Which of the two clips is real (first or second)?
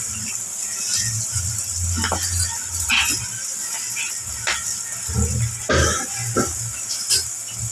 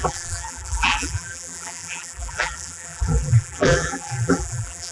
first